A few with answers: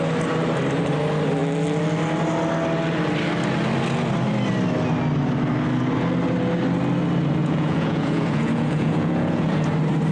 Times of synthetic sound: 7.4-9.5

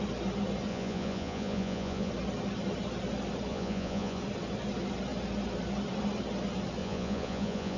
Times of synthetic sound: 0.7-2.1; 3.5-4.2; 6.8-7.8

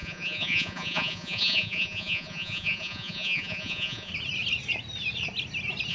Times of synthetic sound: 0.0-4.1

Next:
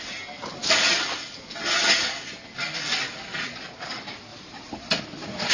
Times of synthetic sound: 3.3-3.9